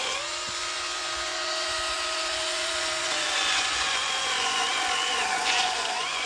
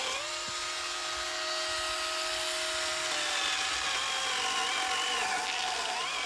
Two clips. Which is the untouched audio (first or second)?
second